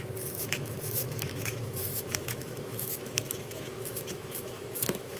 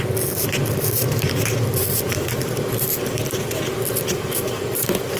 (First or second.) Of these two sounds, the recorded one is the second